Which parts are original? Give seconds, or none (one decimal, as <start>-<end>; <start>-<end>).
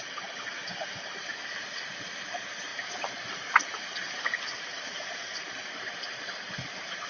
0.0-7.1